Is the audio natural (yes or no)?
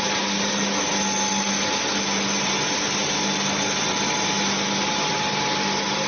yes